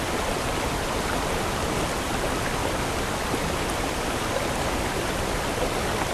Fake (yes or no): no